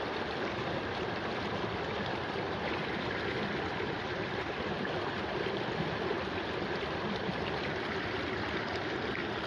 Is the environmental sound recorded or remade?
remade